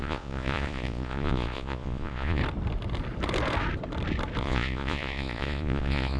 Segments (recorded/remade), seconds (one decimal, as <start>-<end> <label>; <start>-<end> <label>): 0.0-2.4 remade; 2.4-4.4 recorded; 4.4-6.2 remade